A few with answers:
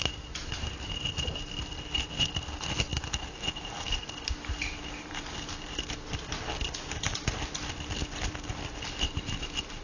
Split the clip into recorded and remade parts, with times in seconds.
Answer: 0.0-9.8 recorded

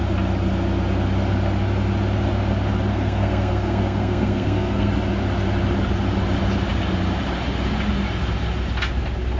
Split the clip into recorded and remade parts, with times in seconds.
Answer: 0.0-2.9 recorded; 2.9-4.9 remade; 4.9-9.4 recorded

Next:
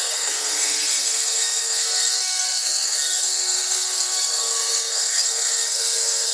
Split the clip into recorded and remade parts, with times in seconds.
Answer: 0.0-6.3 remade

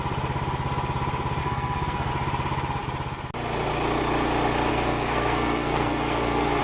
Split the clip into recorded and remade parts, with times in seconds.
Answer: 0.0-1.4 recorded; 1.4-2.1 remade; 2.1-4.7 recorded; 4.7-6.6 remade